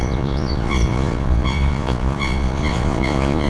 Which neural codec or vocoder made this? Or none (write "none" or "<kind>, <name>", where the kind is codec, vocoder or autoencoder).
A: vocoder, Vocos